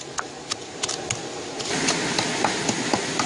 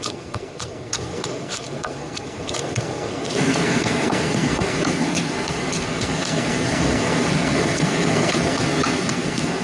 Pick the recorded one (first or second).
first